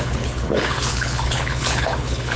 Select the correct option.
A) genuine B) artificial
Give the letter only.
B